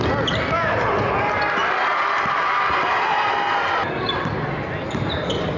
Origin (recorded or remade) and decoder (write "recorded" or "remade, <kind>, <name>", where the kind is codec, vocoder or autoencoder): recorded